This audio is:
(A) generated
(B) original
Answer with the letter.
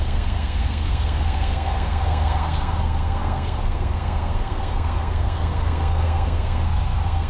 A